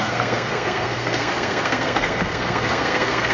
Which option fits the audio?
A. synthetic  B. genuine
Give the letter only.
A